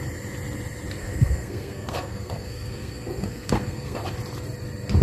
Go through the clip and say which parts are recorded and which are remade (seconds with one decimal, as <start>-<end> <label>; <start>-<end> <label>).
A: 0.0-1.0 recorded; 1.0-4.0 remade; 4.0-5.0 recorded

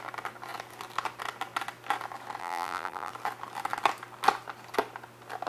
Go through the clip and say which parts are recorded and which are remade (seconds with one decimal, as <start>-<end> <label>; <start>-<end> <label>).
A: 0.0-2.4 recorded; 2.4-3.1 remade; 3.1-5.5 recorded

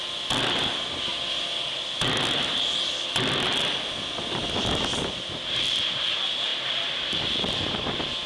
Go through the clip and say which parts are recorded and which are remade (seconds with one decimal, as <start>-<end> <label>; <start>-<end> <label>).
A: 0.0-8.3 recorded

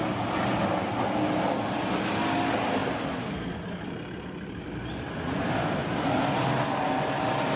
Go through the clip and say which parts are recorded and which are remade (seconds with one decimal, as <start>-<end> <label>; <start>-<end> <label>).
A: 0.0-7.6 recorded